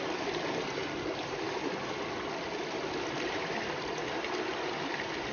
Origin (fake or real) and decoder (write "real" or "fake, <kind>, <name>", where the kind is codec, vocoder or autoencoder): real